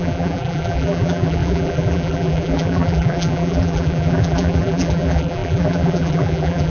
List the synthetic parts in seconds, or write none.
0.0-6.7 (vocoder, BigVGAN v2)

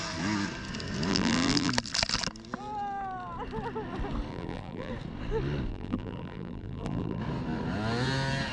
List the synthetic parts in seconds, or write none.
1.1-1.7 (vocoder, BigVGAN v2); 4.3-4.9; 5.7-7.2

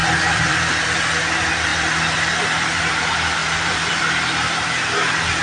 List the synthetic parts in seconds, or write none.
0.0-1.2 (vocoder, BigVGAN v2); 1.7-3.0; 3.4-4.0

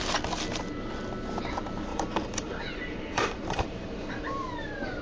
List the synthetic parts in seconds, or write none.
1.9-4.3 (vocoder, BigVGAN v2)

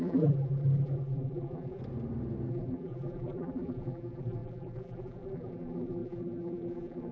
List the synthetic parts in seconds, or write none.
0.0-1.8 (vocoder, BigVGAN v2); 2.5-7.1

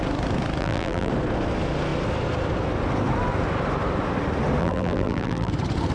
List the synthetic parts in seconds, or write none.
0.6-1.1 (vocoder, BigVGAN v2); 4.6-5.5